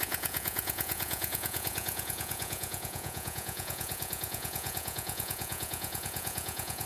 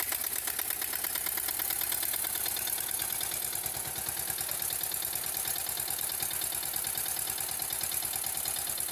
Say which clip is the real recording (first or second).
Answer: second